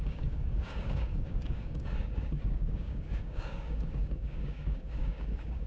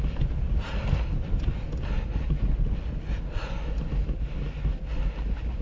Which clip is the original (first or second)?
second